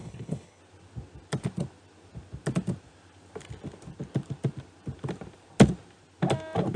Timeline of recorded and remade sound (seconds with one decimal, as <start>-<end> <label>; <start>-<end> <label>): 0.0-0.6 remade; 0.6-6.8 recorded